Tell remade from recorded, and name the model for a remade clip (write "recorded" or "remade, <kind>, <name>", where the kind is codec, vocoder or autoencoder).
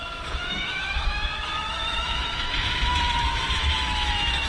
remade, autoencoder, DAC-VAE